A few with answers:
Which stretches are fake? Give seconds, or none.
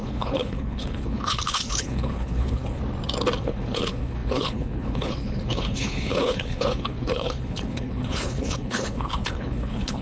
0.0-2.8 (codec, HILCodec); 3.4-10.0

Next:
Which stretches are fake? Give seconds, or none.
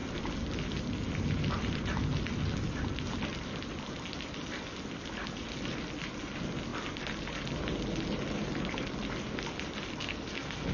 10.0-10.7 (codec, SNAC)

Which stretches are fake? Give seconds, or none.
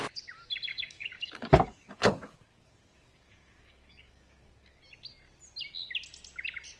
0.7-4.8 (codec, DAC)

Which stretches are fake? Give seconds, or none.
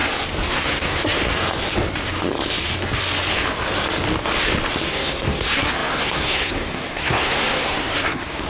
0.5-1.2 (codec, SNAC); 4.9-8.5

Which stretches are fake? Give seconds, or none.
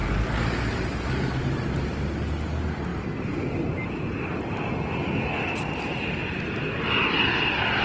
none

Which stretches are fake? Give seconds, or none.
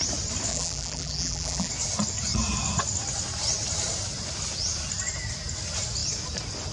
0.5-1.7 (vocoder, BigVGAN v2)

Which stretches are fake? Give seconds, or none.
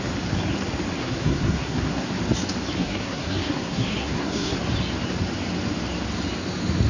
1.0-2.2 (codec, SNAC); 2.8-4.6